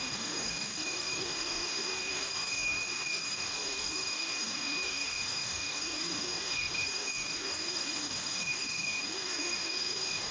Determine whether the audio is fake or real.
fake